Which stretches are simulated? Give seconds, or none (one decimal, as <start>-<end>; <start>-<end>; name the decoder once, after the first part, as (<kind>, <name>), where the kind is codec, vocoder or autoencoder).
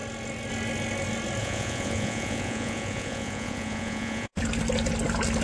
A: 1.4-4.4 (vocoder, Vocos)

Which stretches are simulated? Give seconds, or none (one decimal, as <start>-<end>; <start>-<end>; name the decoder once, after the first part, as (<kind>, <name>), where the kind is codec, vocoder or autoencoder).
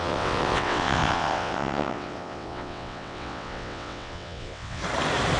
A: 0.0-4.8 (vocoder, WaveNeXt)